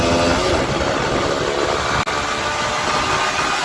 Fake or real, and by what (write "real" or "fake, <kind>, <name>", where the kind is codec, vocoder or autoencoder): real